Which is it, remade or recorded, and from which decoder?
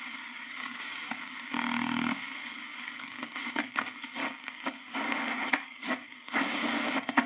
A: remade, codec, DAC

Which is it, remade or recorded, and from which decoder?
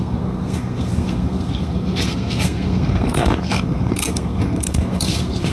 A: remade, codec, SNAC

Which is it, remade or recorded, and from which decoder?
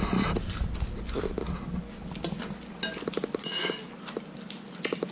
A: recorded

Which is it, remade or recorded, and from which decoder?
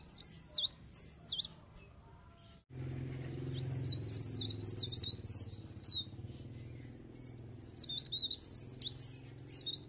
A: recorded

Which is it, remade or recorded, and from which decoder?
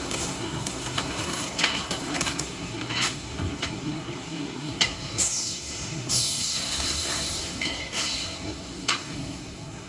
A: remade, codec, SNAC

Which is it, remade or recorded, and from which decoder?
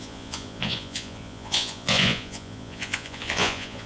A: remade, vocoder, Vocos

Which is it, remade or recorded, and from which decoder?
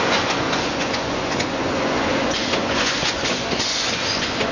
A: remade, vocoder, Vocos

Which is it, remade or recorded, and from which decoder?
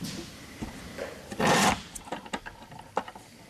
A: recorded